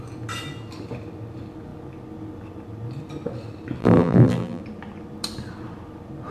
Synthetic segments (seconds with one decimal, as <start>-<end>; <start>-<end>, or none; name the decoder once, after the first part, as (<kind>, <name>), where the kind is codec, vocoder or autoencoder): 3.8-4.6 (vocoder, BigVGAN v2)